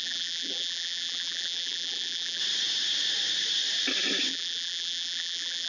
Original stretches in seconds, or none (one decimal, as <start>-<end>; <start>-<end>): 2.4-4.3